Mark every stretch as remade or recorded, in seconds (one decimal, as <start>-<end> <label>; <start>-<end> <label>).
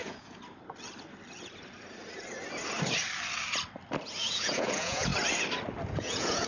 0.0-0.4 remade; 0.4-4.3 recorded; 4.3-5.1 remade; 5.1-5.9 recorded; 5.9-6.5 remade